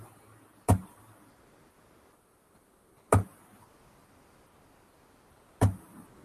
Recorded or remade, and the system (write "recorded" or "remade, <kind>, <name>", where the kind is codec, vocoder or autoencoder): recorded